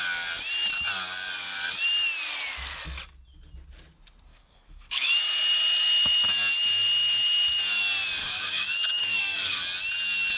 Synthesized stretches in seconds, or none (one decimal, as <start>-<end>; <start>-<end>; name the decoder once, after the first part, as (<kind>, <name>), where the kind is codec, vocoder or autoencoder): 4.3-5.2 (codec, DAC); 8.2-9.6